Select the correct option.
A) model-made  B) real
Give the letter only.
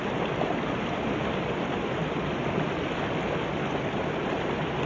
B